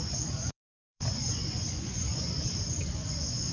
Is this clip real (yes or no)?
no